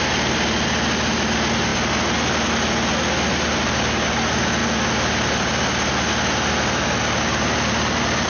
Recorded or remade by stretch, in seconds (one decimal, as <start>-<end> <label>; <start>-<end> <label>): 0.0-8.3 recorded